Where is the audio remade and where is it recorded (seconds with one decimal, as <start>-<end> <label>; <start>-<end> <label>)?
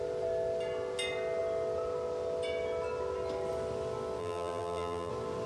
0.0-4.2 recorded; 4.2-5.1 remade; 5.1-5.5 recorded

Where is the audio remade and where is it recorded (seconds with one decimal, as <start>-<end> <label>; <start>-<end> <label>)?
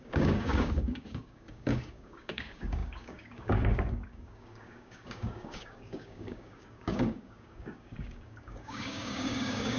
0.0-9.8 remade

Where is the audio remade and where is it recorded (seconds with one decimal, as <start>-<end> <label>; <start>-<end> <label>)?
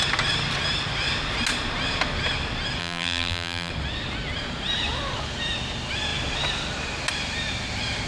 0.0-2.8 recorded; 2.8-3.7 remade; 3.7-8.1 recorded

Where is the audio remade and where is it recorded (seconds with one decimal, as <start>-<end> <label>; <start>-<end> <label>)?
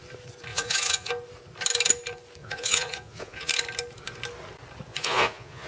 0.0-0.5 recorded; 0.5-1.1 remade; 1.1-2.4 recorded; 2.4-3.5 remade; 3.5-4.9 recorded; 4.9-5.7 remade